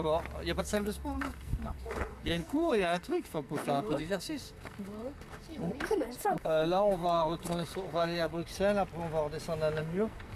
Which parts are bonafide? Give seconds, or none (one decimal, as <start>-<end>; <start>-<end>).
0.0-0.6; 8.5-9.8